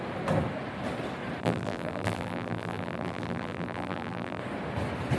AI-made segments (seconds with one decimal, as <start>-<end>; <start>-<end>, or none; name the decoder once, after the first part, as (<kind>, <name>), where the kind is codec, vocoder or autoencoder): 1.4-4.4 (vocoder, BigVGAN v2)